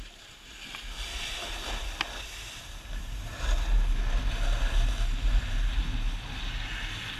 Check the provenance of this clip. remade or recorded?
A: recorded